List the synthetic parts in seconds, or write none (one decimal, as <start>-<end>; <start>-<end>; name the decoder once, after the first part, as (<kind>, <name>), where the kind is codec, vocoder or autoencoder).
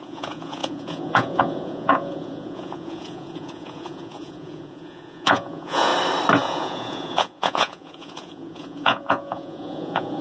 0.0-5.9 (vocoder, Vocos); 6.4-10.2